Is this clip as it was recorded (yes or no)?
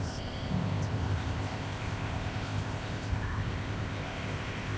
no